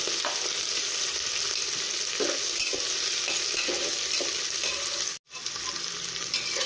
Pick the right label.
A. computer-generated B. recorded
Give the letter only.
B